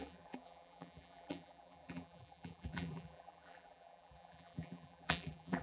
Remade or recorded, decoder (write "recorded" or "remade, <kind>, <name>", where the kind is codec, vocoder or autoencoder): remade, vocoder, BigVGAN v2